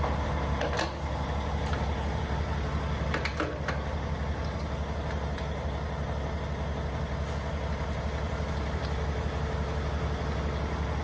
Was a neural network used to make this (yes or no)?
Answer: no